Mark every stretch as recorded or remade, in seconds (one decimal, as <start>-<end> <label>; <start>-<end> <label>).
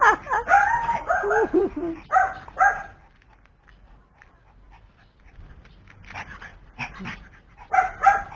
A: 0.0-0.5 recorded; 0.5-2.4 remade; 2.4-6.5 recorded; 6.5-7.8 remade; 7.8-8.3 recorded